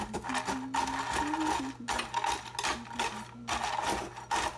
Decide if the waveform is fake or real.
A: real